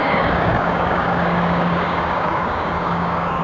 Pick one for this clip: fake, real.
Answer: fake